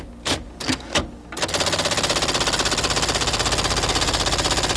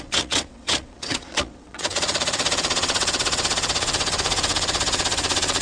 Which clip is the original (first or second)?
first